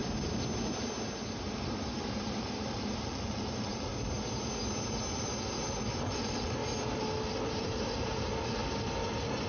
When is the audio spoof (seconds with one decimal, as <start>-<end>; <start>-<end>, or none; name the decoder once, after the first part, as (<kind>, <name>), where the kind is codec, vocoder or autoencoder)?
1.6-3.9 (vocoder, BigVGAN v2); 5.6-6.6; 7.4-8.6